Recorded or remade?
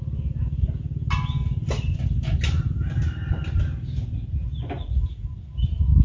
recorded